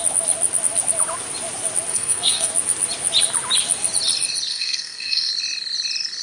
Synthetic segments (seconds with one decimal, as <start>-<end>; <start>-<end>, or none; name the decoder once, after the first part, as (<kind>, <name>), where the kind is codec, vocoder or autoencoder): 1.9-2.5 (codec, SNAC); 4.5-5.3